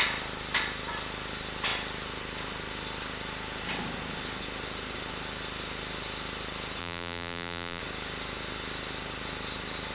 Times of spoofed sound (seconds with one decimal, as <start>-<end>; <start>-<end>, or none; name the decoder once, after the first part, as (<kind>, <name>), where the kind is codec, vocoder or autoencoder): 6.8-7.8 (vocoder, BigVGAN v2)